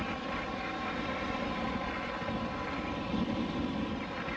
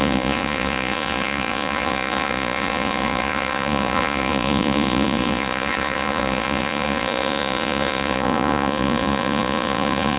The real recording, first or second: first